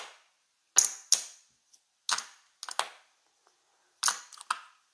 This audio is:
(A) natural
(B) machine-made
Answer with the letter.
A